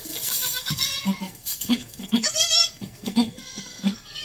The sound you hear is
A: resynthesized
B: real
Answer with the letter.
A